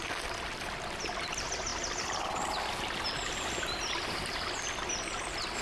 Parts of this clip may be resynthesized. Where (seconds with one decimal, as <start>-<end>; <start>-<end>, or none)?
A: none